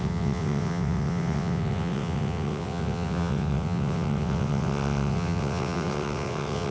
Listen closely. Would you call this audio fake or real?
fake